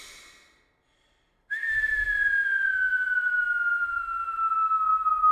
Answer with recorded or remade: recorded